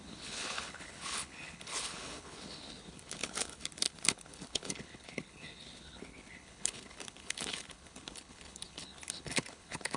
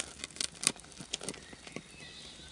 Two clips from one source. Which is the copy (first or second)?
first